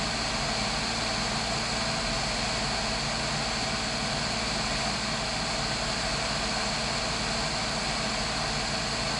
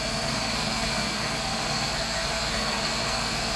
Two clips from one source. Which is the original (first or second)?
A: first